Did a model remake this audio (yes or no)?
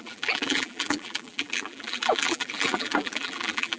yes